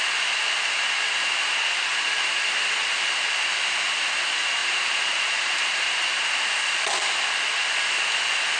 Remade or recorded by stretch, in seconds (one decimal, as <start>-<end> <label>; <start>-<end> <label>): 0.0-4.6 recorded; 4.6-6.3 remade; 6.3-8.6 recorded